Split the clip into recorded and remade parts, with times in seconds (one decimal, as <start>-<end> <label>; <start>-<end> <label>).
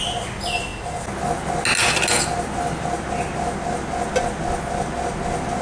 0.0-5.6 recorded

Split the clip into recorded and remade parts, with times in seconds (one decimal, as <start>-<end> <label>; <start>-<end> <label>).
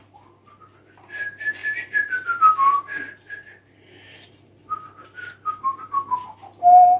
0.0-7.0 recorded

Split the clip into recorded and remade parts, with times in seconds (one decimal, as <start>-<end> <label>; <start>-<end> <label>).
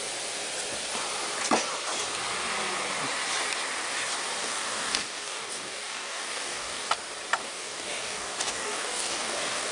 0.0-4.4 recorded; 4.4-6.9 remade; 6.9-7.4 recorded; 7.4-9.7 remade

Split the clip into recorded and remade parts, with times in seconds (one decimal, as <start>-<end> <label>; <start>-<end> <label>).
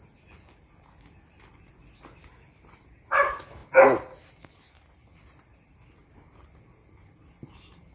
0.0-7.9 recorded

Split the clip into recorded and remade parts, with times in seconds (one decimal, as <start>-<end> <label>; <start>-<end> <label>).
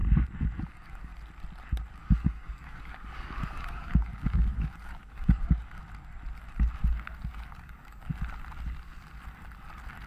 0.0-0.6 recorded; 0.6-1.1 remade; 1.1-1.9 recorded; 1.9-5.8 remade; 5.8-7.3 recorded; 7.3-8.1 remade; 8.1-10.1 recorded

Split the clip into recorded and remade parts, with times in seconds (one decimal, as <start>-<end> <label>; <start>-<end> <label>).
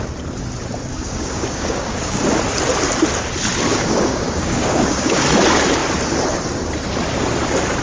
0.0-0.9 recorded; 0.9-2.2 remade; 2.2-3.7 recorded; 3.7-5.2 remade; 5.2-7.8 recorded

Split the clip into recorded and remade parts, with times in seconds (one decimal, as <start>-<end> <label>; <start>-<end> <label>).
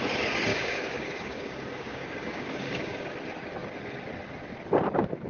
0.0-0.5 recorded; 0.5-3.1 remade; 3.1-5.3 recorded